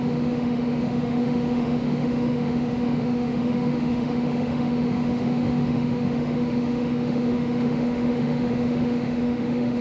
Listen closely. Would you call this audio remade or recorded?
remade